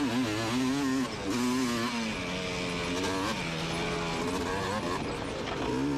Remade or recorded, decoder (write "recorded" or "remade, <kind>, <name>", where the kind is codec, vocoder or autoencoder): recorded